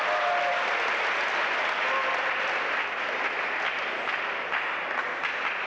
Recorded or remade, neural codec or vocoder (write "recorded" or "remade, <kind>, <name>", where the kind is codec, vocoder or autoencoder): recorded